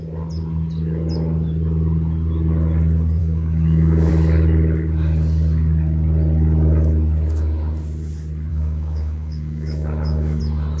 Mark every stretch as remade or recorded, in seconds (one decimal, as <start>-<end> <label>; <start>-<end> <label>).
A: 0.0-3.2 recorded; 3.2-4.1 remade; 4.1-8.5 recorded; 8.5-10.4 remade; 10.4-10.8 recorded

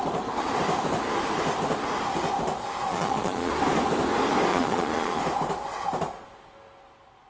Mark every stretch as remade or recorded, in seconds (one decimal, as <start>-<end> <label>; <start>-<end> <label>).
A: 0.0-2.9 recorded; 2.9-3.5 remade; 3.5-4.5 recorded; 4.5-5.2 remade; 5.2-7.3 recorded

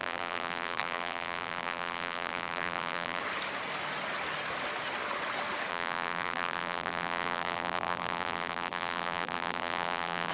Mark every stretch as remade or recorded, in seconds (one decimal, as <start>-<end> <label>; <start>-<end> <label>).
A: 0.0-3.2 remade; 3.2-5.7 recorded; 5.7-10.3 remade